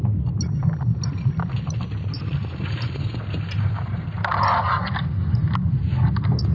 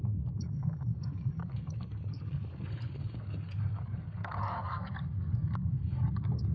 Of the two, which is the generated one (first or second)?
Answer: second